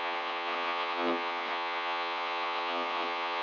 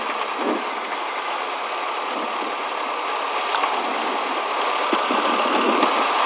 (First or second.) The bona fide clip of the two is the second